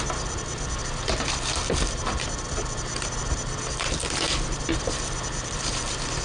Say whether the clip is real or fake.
fake